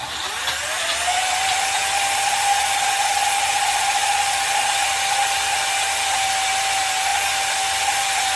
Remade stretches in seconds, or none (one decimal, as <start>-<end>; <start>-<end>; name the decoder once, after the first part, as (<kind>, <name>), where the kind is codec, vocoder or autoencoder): none